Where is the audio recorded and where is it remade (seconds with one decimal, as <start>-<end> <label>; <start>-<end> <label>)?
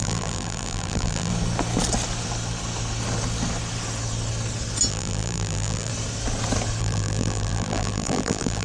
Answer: 0.0-1.3 remade; 1.3-4.9 recorded; 4.9-5.9 remade; 5.9-6.8 recorded; 6.8-8.6 remade